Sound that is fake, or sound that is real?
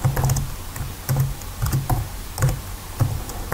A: real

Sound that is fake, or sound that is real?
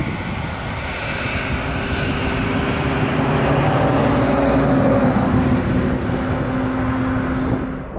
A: real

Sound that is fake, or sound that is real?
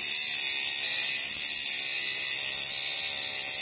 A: real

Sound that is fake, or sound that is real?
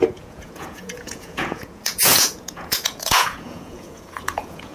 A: fake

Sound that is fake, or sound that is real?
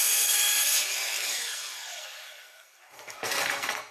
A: fake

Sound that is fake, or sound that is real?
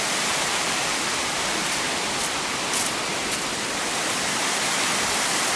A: real